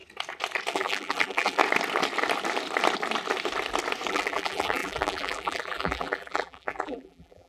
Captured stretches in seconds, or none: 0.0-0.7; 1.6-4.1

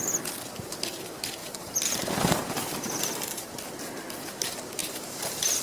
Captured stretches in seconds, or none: 0.0-1.4; 3.5-4.8

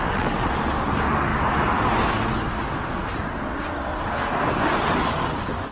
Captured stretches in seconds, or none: 0.5-5.7